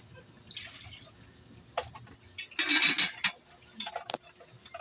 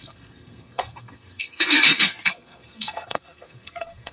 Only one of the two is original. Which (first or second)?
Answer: first